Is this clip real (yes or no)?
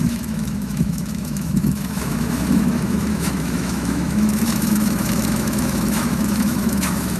no